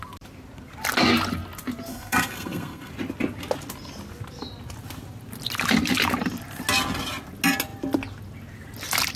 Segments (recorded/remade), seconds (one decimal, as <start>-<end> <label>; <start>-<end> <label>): 0.0-1.9 recorded; 1.9-2.9 remade; 2.9-9.2 recorded